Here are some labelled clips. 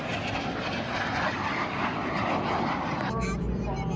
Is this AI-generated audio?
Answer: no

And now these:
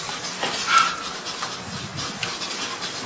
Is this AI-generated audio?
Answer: no